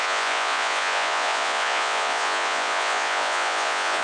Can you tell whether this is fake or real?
fake